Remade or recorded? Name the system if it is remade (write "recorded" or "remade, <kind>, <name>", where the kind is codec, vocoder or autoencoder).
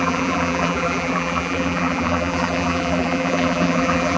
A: remade, vocoder, BigVGAN v2